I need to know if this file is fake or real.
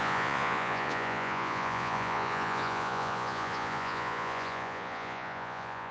fake